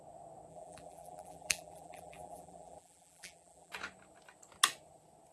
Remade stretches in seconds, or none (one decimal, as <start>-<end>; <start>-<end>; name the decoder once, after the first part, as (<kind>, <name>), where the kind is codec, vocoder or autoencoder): 0.5-3.7 (vocoder, BigVGAN v2)